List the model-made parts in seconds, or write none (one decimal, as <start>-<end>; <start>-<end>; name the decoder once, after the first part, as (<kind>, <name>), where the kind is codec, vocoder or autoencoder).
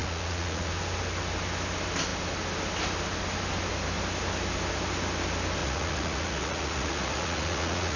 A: 0.0-0.7 (vocoder, Vocos); 5.6-8.0